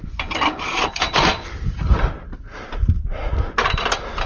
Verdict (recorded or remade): recorded